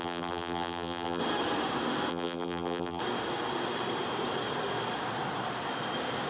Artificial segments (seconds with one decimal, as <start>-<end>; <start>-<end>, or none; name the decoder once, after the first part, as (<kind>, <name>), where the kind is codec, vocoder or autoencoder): 0.0-1.2 (vocoder, BigVGAN v2); 2.1-3.0